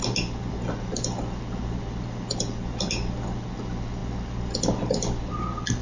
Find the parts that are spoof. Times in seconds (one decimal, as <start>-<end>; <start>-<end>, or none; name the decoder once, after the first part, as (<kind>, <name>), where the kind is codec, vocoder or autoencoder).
none